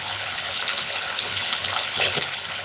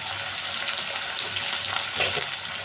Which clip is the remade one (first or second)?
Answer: first